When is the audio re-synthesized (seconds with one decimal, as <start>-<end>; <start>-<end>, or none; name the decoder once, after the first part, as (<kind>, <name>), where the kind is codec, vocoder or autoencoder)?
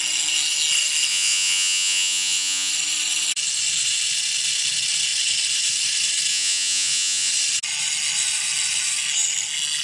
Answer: 1.1-2.7 (vocoder, Vocos); 6.3-7.3